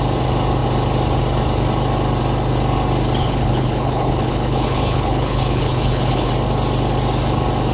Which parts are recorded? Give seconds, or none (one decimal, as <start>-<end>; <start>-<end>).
0.0-3.2; 6.3-7.7